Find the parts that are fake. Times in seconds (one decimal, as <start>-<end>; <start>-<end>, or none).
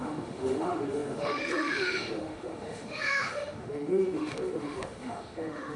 0.0-5.8